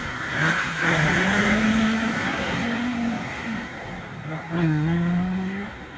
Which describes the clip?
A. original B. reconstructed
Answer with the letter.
B